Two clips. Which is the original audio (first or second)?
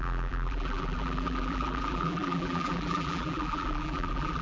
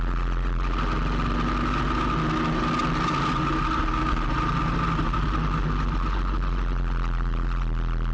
second